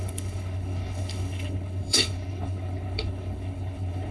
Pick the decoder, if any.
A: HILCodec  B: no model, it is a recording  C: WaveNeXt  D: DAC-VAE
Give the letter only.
A